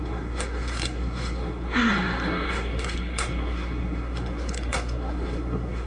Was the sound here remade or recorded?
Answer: remade